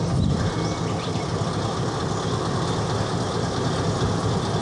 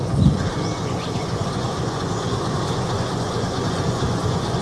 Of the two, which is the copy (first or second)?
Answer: second